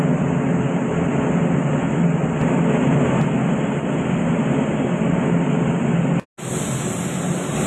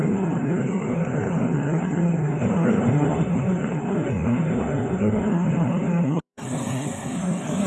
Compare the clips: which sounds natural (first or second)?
first